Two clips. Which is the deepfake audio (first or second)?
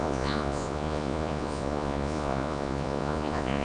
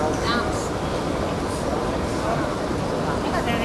first